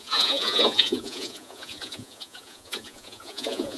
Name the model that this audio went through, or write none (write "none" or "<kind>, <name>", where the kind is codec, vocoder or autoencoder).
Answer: vocoder, Vocos